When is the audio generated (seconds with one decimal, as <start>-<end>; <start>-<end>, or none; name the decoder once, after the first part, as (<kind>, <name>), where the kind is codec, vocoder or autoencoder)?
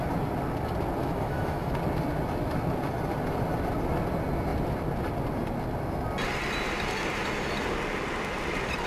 1.0-1.7 (autoencoder, DAC-VAE)